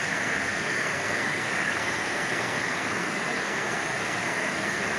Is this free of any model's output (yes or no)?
no